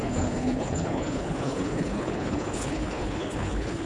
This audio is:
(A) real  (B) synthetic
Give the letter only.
B